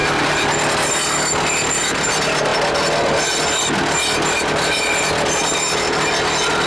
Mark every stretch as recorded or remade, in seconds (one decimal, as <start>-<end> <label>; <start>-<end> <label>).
0.0-6.7 recorded